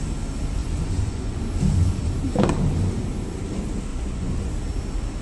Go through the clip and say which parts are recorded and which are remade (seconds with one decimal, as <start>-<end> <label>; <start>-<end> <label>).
0.0-0.6 recorded; 0.6-1.4 remade; 1.4-3.9 recorded; 3.9-4.5 remade; 4.5-5.2 recorded